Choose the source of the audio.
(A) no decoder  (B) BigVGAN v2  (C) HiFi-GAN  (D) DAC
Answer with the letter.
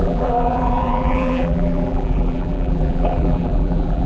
B